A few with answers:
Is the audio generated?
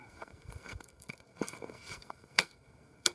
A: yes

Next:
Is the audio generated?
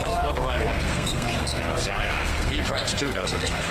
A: yes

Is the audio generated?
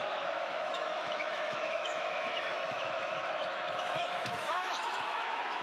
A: yes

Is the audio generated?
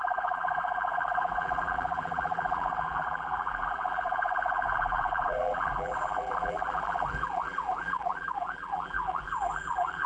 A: yes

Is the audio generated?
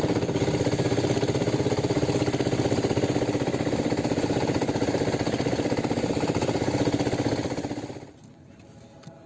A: no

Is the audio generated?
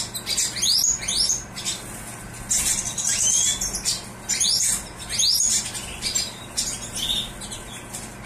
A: no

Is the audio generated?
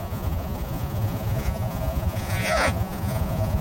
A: yes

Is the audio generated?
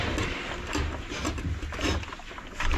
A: no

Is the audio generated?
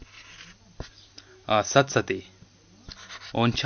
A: no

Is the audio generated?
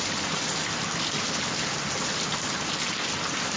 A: no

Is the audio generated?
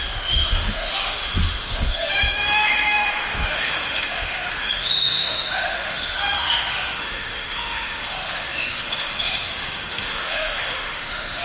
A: yes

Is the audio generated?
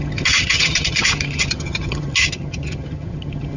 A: yes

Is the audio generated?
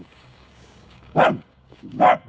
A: yes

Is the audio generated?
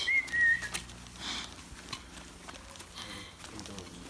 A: no